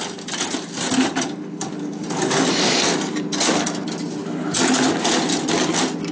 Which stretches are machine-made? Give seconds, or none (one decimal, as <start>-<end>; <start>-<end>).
none